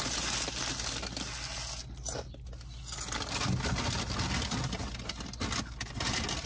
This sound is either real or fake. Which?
real